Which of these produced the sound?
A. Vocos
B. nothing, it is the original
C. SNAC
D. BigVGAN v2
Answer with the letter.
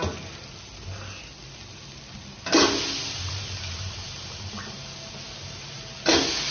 B